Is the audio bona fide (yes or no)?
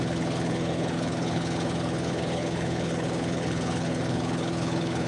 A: no